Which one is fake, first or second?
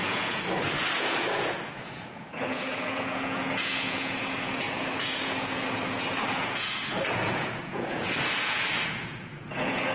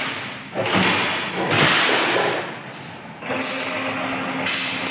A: first